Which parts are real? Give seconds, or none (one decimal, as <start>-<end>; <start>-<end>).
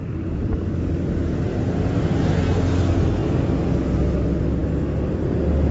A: 0.9-5.7